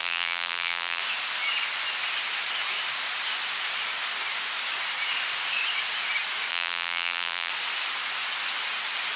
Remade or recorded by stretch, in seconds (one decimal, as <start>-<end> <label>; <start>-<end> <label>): 0.0-1.0 remade; 1.0-6.5 recorded; 6.5-7.5 remade; 7.5-9.2 recorded